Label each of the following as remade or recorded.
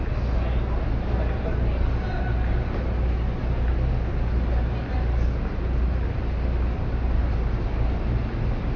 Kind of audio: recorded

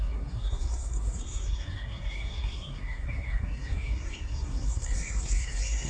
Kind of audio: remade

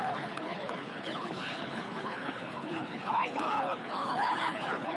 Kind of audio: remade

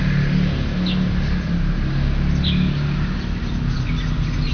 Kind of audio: recorded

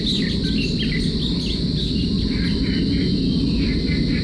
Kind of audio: recorded